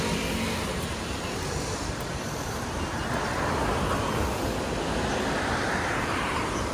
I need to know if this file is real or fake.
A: real